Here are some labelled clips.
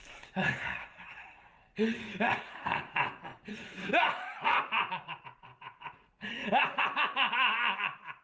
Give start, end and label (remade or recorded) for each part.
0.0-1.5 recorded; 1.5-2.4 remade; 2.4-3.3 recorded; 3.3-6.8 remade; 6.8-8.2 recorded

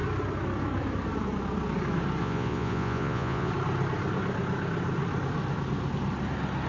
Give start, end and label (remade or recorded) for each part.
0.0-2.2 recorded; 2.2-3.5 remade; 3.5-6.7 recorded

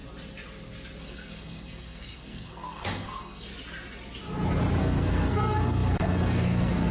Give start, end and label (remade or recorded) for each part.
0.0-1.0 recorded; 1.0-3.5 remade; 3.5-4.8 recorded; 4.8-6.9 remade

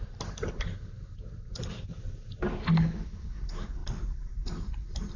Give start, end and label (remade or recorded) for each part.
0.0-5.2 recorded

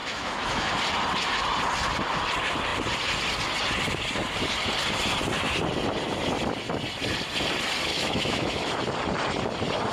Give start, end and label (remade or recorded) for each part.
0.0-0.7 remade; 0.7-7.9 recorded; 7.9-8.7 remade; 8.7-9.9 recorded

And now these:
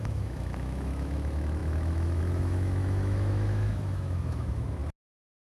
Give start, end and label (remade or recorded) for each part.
0.0-4.8 remade; 4.8-5.5 recorded

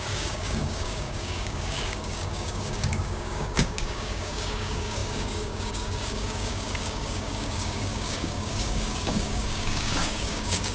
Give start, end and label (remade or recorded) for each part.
0.0-10.7 remade